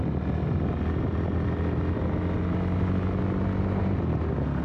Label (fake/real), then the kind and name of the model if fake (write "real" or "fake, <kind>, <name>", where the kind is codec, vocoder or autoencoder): real